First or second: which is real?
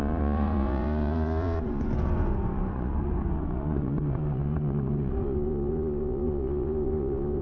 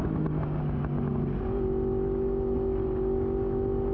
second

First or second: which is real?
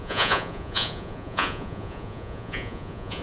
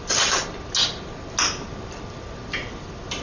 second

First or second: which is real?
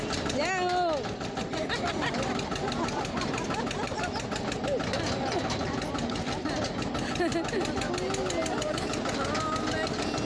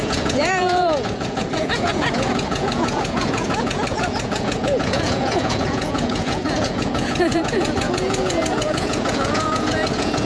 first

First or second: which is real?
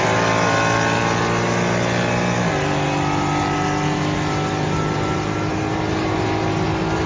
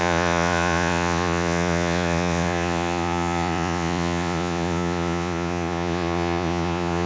first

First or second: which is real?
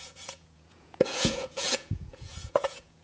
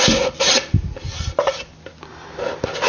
second